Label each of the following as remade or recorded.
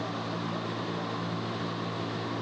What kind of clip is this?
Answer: recorded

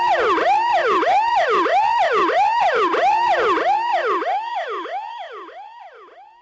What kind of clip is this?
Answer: recorded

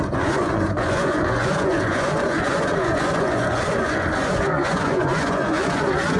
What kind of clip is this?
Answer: remade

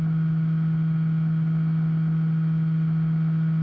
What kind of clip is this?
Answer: recorded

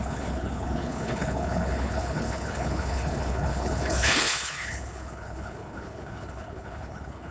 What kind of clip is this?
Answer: remade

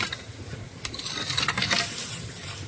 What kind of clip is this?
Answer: recorded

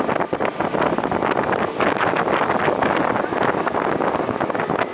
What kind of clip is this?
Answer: recorded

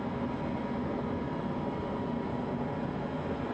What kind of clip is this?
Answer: recorded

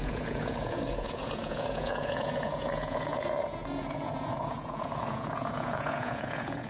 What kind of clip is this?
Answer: remade